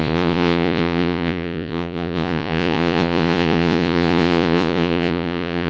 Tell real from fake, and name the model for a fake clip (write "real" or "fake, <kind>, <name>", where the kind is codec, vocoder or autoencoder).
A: fake, vocoder, Vocos